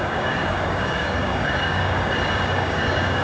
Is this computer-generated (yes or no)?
yes